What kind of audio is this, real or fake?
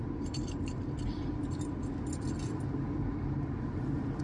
fake